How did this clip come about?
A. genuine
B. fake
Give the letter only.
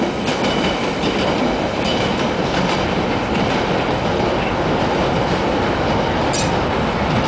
A